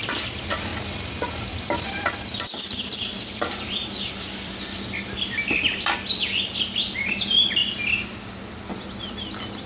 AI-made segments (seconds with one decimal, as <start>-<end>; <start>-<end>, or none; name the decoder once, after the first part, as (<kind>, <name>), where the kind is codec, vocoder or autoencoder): 0.0-7.6 (vocoder, BigVGAN v2); 8.8-9.7